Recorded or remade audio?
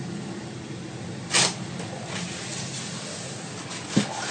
recorded